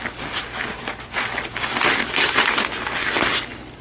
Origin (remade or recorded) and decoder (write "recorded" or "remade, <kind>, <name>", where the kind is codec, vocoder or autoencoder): recorded